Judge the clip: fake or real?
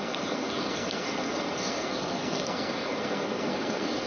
fake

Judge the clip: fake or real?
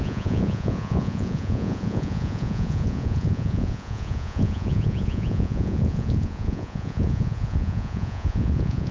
fake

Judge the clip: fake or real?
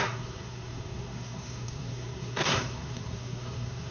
fake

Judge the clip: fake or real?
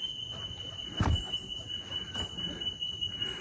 real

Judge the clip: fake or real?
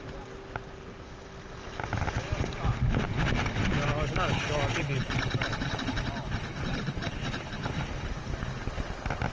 real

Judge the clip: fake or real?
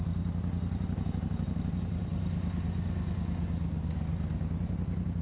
real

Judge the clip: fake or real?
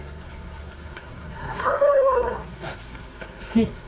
fake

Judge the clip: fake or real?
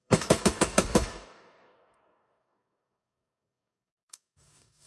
fake